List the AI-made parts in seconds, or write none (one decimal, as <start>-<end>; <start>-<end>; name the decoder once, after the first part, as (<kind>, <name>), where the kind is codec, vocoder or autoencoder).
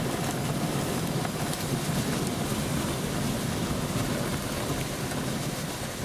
none